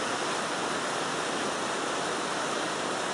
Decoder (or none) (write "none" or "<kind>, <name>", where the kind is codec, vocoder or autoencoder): none